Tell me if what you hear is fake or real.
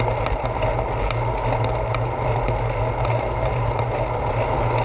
real